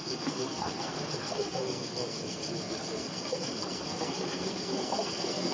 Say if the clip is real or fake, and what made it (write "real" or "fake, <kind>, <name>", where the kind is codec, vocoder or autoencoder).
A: fake, codec, SNAC